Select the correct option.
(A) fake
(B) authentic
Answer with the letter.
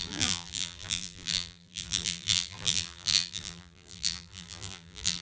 A